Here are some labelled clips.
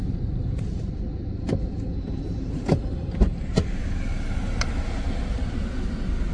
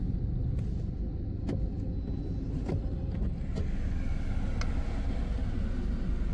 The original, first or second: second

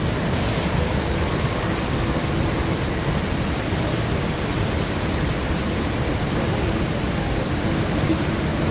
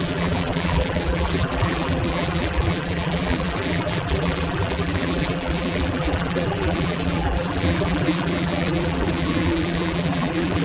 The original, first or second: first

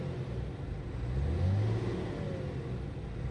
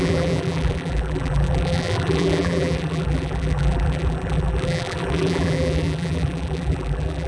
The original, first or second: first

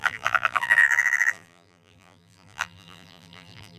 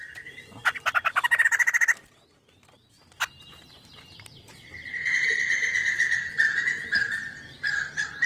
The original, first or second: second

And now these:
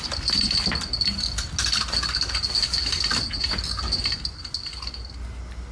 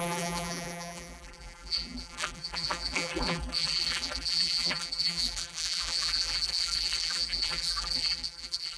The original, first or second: first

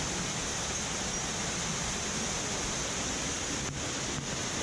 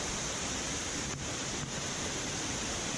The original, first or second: first